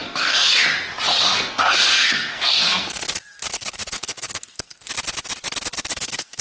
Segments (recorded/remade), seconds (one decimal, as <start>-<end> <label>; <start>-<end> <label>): 0.0-0.5 remade; 0.5-1.1 recorded; 1.1-4.9 remade; 4.9-5.9 recorded; 5.9-6.4 remade